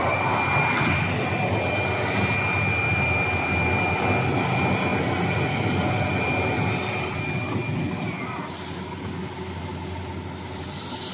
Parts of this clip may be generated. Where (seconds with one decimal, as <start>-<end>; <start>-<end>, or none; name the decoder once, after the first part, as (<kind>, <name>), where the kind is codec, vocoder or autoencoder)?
none